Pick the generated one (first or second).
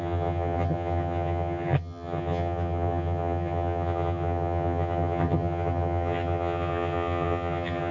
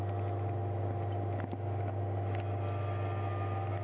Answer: first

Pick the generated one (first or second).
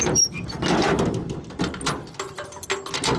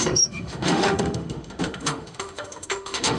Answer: second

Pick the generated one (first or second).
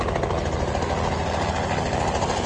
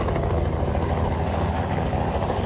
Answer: second